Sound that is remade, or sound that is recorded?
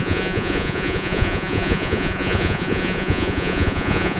remade